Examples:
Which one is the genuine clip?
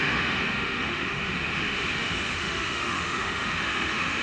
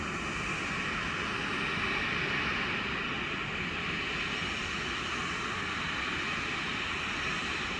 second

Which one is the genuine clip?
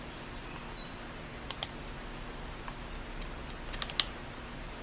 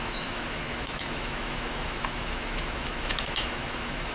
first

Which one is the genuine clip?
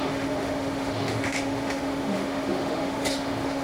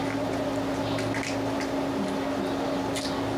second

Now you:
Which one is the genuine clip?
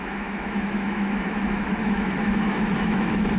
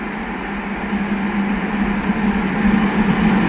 second